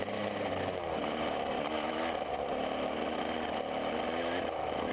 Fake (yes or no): no